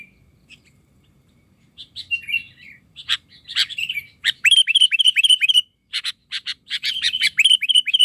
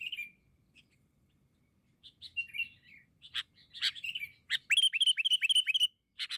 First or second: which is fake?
first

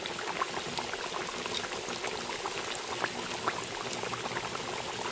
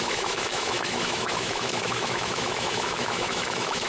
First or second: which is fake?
second